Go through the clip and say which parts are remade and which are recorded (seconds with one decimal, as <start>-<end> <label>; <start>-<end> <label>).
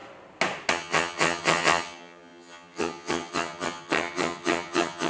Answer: 0.0-0.7 recorded; 0.7-5.1 remade